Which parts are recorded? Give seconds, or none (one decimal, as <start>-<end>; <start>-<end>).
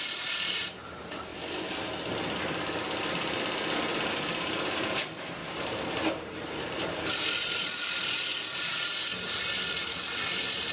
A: 1.3-4.1